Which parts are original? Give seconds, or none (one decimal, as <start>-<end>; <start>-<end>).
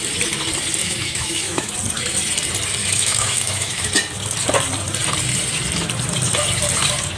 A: 0.0-0.8; 1.7-2.8; 3.9-7.2